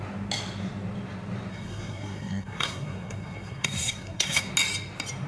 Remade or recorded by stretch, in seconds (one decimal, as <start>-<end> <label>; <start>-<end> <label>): 0.0-1.5 recorded; 1.5-4.5 remade; 4.5-5.3 recorded